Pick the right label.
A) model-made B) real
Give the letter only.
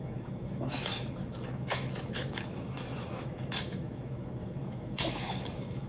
A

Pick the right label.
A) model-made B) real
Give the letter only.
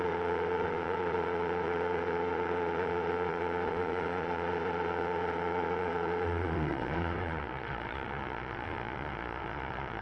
A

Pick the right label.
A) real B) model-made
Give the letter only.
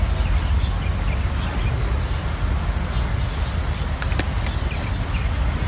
A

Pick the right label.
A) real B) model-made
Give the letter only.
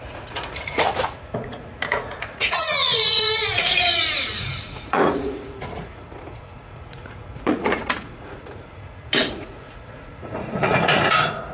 B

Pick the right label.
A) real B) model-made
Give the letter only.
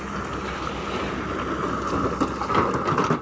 A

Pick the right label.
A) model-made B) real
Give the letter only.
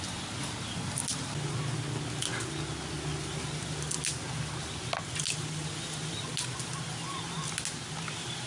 B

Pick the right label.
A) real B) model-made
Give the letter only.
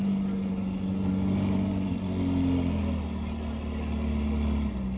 A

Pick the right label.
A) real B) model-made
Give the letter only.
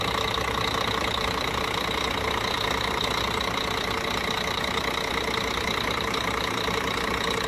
A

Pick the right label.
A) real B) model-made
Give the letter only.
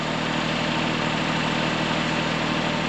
A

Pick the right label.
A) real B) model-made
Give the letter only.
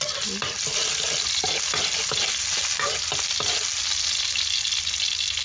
A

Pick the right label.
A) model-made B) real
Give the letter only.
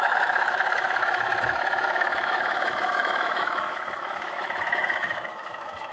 A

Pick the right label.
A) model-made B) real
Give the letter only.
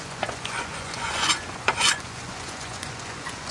A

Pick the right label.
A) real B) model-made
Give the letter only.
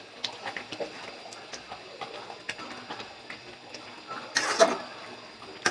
A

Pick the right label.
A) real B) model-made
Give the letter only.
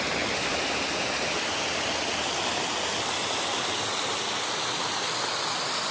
A